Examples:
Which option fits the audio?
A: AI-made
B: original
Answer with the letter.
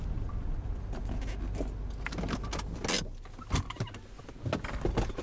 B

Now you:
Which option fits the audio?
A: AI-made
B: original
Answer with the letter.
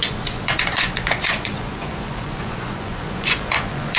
A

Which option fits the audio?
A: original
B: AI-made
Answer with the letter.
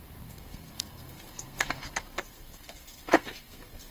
B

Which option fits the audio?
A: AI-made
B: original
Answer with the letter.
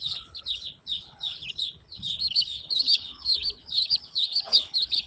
A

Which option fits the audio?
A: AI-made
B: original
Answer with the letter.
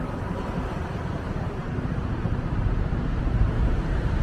A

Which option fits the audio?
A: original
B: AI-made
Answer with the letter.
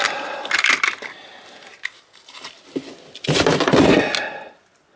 A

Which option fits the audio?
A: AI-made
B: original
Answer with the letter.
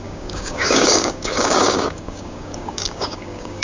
A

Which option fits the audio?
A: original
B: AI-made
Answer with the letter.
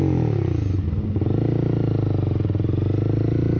A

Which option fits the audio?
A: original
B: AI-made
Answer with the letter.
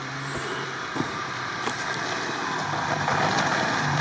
B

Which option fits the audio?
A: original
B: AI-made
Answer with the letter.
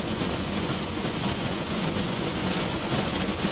B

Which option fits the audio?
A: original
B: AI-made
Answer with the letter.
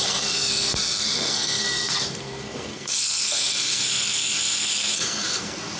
B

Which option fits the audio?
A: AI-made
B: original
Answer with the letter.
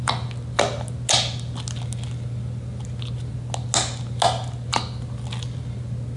B